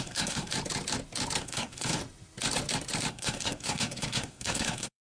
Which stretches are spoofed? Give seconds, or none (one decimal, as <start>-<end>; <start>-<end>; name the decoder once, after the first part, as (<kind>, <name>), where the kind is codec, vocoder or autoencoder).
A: 0.0-0.5 (codec, SNAC); 1.4-2.0; 3.1-5.2